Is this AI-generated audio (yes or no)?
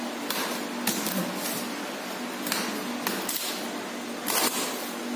no